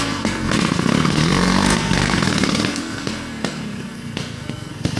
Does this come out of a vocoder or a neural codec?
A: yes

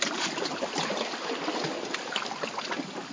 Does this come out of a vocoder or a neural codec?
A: no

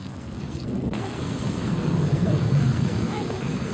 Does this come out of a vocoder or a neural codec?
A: yes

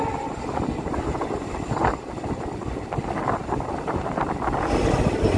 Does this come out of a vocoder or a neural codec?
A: no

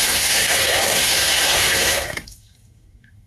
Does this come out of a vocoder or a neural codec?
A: yes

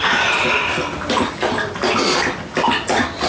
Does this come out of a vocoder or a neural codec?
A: no